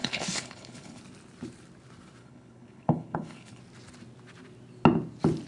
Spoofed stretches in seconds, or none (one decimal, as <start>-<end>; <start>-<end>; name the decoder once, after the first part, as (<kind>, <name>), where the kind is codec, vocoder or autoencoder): 0.0-1.0 (codec, HILCodec); 2.2-3.6